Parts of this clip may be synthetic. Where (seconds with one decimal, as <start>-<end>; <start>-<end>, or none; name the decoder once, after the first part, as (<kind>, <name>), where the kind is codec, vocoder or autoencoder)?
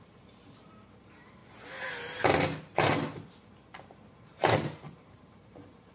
0.0-1.4 (vocoder, BigVGAN v2); 4.1-5.9